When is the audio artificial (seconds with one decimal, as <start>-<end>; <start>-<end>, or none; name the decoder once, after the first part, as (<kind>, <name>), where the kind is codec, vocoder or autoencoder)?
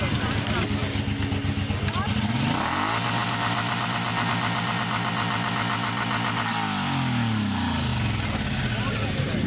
none